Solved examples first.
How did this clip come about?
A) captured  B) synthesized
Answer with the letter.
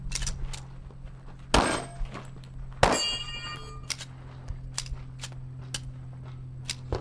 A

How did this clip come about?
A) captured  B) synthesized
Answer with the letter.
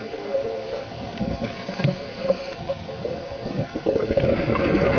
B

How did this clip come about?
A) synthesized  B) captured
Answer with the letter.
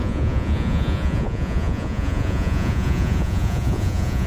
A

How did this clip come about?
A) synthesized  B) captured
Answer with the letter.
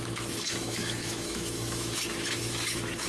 A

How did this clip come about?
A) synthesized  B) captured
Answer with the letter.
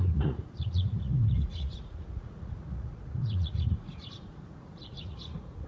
A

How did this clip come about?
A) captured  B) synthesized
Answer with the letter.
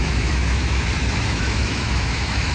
B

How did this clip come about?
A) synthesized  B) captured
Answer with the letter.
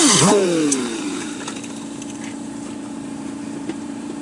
A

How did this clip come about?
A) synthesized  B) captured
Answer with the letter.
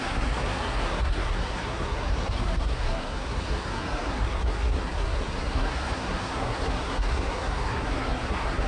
A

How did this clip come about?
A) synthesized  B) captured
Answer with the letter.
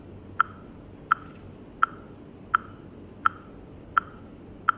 B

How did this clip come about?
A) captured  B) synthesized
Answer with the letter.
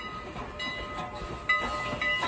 A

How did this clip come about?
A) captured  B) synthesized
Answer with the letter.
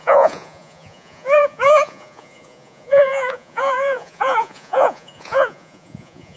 B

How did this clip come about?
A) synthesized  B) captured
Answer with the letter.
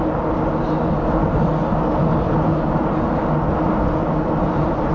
B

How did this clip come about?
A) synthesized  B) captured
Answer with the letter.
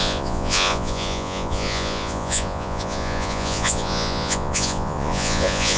A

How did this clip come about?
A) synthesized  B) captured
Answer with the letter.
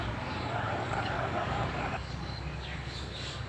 A